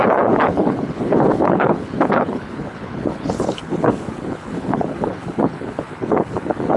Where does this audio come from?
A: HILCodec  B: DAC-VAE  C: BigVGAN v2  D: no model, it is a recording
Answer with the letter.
A